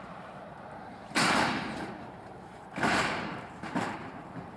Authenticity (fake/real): fake